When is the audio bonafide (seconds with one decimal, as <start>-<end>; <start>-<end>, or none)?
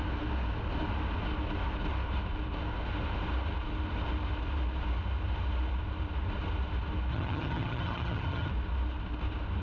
0.0-7.1; 8.5-9.6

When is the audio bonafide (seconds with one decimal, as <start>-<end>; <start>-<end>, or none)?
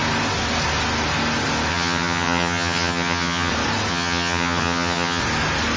0.0-1.7; 3.5-3.9; 5.2-5.8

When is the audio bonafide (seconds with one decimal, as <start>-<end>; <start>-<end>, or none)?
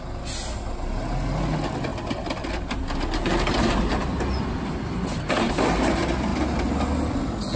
0.0-7.6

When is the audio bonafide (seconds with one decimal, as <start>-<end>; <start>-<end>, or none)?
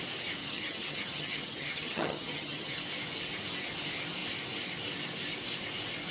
0.0-0.4; 2.8-6.1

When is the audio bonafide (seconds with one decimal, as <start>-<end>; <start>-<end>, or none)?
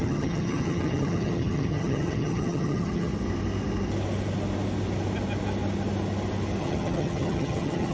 3.1-6.6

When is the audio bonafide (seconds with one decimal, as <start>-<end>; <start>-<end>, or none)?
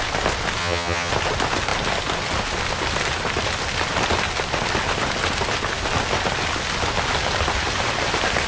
0.0-0.6; 1.1-8.5